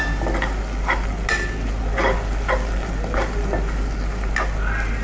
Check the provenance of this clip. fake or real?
real